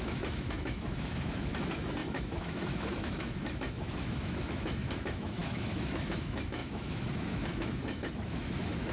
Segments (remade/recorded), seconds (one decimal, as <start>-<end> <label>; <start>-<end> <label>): 0.0-8.9 remade